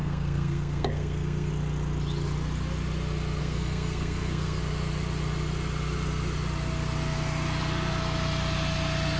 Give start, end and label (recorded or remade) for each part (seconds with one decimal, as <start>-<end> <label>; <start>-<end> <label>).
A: 0.0-1.5 remade; 1.5-3.4 recorded; 3.4-4.6 remade; 4.6-9.2 recorded